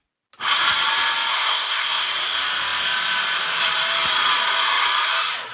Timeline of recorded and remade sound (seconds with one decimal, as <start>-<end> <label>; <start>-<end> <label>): 0.0-1.3 recorded; 1.3-2.1 remade; 2.1-5.5 recorded